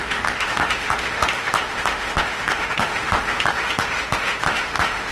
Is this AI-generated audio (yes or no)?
yes